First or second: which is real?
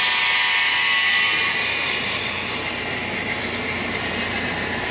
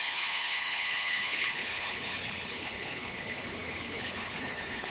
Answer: first